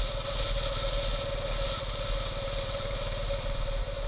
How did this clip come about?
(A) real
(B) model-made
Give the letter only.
A